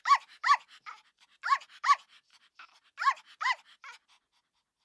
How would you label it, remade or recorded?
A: recorded